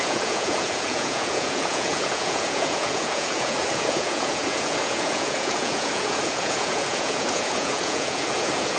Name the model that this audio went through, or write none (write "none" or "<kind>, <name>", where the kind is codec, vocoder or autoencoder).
vocoder, Vocos